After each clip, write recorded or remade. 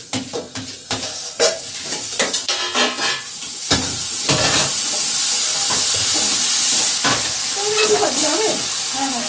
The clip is recorded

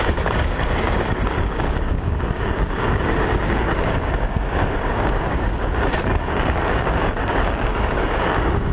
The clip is remade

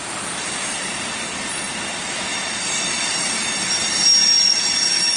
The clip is recorded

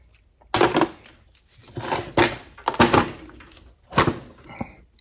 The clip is recorded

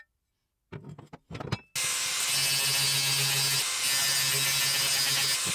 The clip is recorded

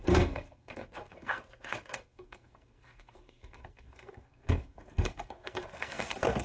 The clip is remade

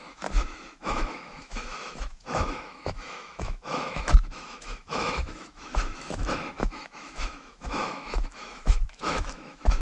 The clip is remade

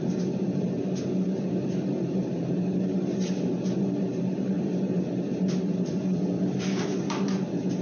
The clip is remade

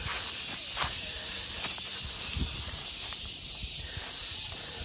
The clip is recorded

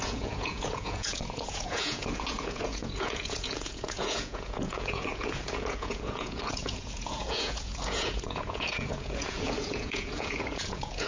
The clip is remade